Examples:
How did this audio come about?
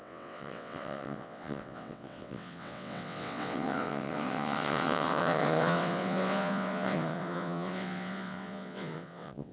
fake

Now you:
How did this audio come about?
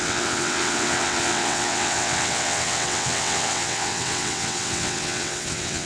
fake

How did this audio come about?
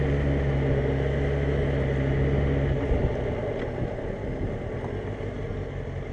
real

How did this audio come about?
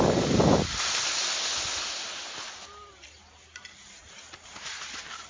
real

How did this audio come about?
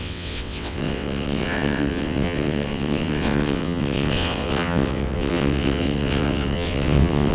fake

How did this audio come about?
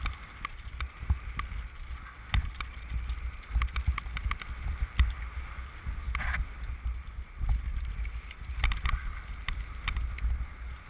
real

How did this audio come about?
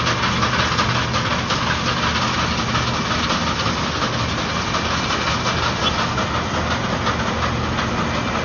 real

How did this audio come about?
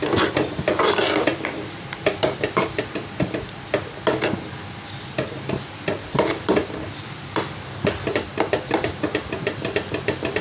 real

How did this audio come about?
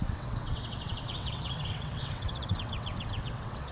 fake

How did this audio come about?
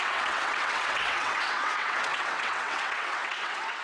fake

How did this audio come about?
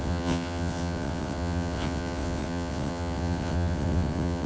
fake